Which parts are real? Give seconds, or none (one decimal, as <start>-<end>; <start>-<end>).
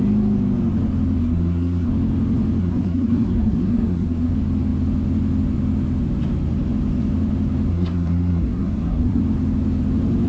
0.0-1.2; 1.9-2.6; 4.3-7.7; 9.2-10.3